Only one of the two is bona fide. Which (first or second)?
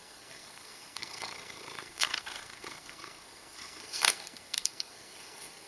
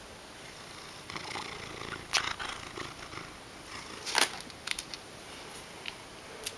second